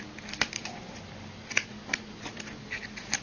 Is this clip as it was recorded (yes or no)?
yes